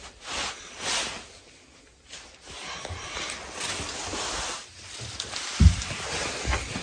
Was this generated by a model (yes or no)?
no